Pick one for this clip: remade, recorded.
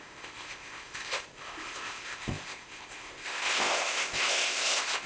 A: remade